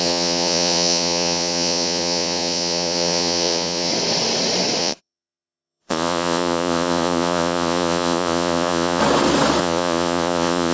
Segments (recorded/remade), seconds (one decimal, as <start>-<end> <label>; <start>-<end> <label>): 0.0-3.9 remade; 3.9-4.8 recorded; 4.8-9.0 remade; 9.0-9.6 recorded; 9.6-10.7 remade